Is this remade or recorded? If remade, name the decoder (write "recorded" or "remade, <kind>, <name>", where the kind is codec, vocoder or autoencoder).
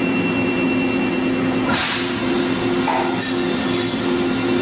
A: recorded